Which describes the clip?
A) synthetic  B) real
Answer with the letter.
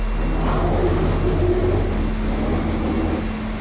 B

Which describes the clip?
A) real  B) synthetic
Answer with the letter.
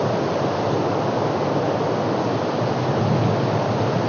A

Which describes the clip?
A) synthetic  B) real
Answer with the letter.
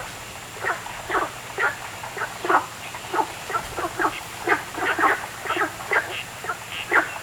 A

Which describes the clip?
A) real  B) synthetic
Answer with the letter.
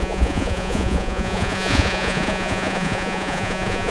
B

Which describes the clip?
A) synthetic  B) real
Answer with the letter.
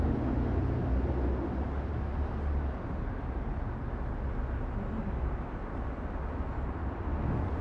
B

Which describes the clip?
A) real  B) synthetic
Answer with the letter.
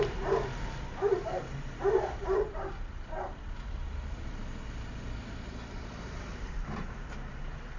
B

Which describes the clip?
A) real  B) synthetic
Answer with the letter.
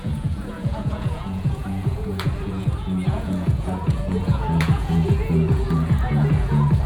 B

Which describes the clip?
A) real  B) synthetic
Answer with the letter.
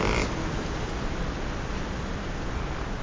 A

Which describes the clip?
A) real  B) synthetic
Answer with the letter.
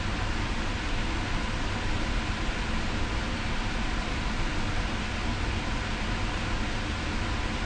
A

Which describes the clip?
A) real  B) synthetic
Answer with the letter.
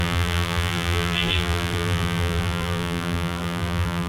B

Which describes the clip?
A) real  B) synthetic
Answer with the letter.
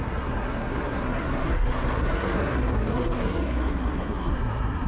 B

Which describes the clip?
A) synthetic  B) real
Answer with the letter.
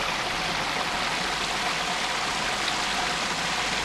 B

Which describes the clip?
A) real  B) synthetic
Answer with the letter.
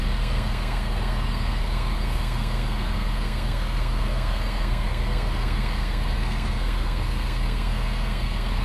B